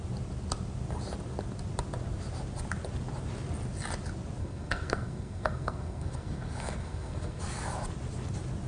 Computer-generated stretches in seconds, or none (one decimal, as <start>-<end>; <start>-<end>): 4.4-7.4